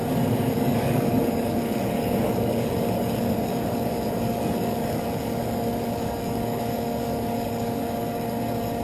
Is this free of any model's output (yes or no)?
no